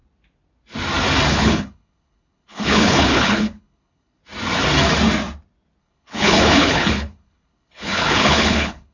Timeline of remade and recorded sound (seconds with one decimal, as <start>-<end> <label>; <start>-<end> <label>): 0.0-1.3 recorded; 1.3-4.2 remade; 4.2-5.8 recorded; 5.8-8.9 remade